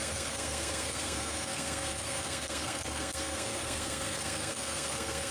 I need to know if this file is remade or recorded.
remade